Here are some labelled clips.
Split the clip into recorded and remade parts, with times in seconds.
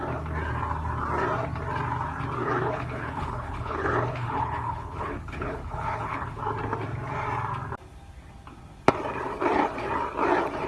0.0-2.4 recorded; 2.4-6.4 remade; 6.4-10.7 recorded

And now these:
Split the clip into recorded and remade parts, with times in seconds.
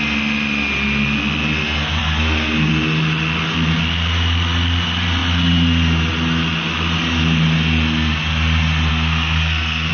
0.0-2.0 recorded; 2.0-2.7 remade; 2.7-8.9 recorded; 8.9-9.9 remade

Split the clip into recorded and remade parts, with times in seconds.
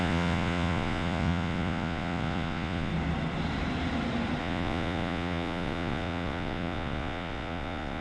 0.0-2.9 remade; 2.9-4.4 recorded; 4.4-8.0 remade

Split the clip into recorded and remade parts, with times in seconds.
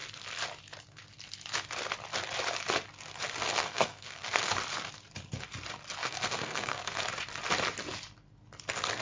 0.0-3.6 recorded; 3.6-4.4 remade; 4.4-6.0 recorded; 6.0-7.0 remade; 7.0-9.0 recorded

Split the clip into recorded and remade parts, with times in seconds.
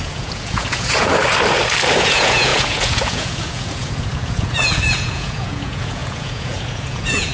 0.0-1.2 remade; 1.2-2.0 recorded; 2.0-7.3 remade